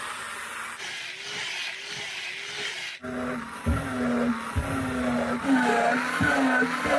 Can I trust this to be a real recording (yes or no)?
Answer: yes